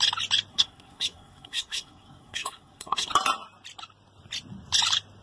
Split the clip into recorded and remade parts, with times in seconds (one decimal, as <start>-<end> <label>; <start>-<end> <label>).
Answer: 0.0-0.5 recorded; 0.5-3.1 remade; 3.1-5.2 recorded